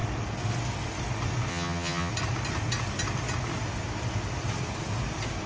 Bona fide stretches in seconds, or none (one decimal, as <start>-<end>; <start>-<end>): 0.0-1.5; 2.1-5.5